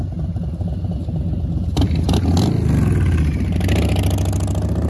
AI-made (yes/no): no